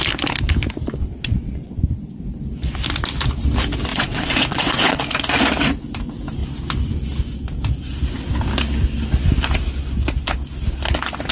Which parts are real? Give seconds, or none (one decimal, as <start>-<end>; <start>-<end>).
0.0-1.0; 1.8-3.9; 5.0-11.3